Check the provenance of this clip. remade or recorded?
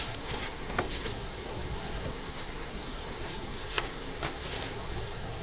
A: remade